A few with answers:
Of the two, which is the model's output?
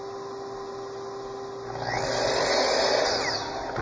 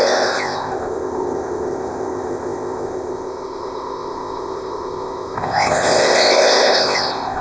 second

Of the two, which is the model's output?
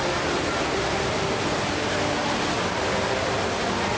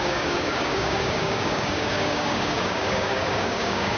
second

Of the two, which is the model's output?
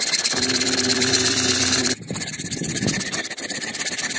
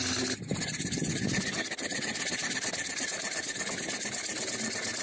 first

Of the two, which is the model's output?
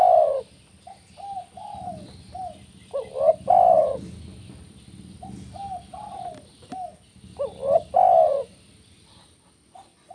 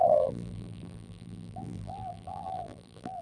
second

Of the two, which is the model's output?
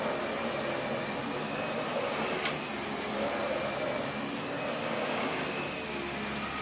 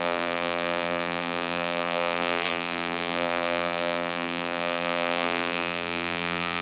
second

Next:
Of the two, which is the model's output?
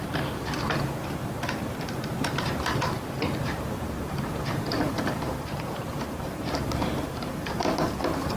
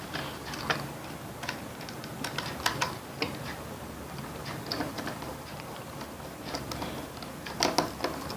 first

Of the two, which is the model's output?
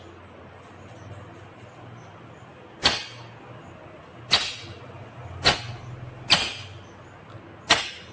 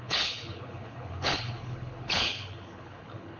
second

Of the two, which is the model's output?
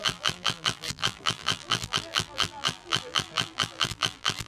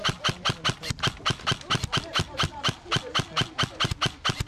first